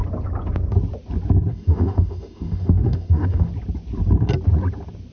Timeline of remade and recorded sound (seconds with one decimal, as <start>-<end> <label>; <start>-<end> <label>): 0.0-1.5 recorded; 1.5-3.5 remade; 3.5-5.1 recorded